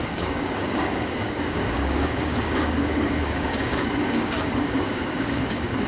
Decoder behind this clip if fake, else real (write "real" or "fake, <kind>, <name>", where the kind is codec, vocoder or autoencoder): fake, codec, DAC